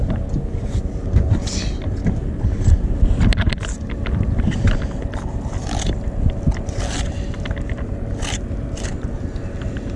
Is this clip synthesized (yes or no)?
no